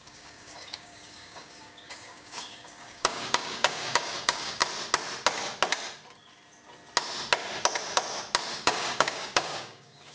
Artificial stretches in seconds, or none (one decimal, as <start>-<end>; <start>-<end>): 0.0-4.6; 8.5-10.1